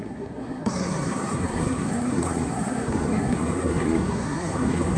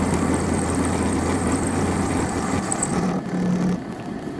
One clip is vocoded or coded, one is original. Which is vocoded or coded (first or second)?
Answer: first